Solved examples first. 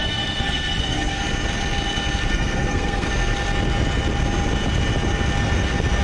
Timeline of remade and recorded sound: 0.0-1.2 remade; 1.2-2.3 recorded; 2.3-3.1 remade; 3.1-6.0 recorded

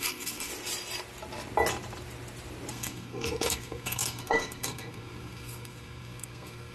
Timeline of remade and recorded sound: 0.0-0.5 remade; 0.5-2.7 recorded; 2.7-6.7 remade